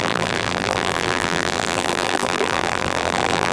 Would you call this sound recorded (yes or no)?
no